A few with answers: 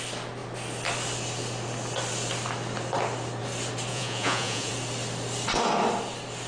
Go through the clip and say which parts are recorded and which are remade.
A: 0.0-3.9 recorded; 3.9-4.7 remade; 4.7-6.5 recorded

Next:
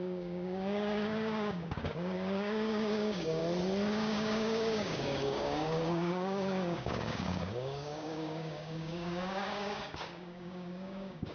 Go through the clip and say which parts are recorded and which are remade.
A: 0.0-3.4 remade; 3.4-3.9 recorded; 3.9-11.3 remade

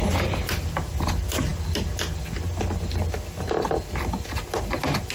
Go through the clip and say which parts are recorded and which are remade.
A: 0.0-5.1 recorded

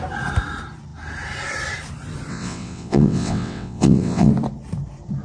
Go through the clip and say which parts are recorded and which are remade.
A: 0.0-2.3 recorded; 2.3-4.3 remade; 4.3-5.2 recorded

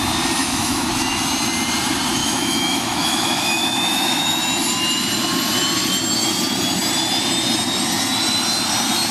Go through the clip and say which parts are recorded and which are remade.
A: 0.0-0.4 recorded; 0.4-0.9 remade; 0.9-2.2 recorded; 2.2-4.4 remade; 4.4-9.1 recorded

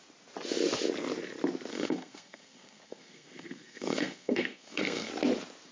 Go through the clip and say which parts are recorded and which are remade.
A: 0.0-1.7 recorded; 1.7-5.1 remade; 5.1-5.7 recorded

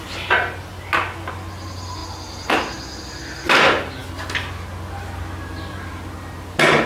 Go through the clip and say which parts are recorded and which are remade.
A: 0.0-6.9 recorded